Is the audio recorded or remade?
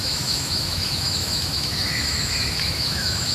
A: remade